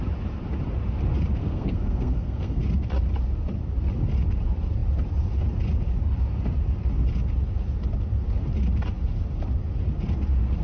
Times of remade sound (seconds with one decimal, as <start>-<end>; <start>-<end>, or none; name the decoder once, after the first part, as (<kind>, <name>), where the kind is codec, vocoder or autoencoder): 1.4-2.6 (codec, SNAC)